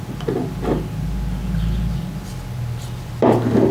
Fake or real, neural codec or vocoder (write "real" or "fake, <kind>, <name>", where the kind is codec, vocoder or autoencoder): fake, vocoder, BigVGAN v2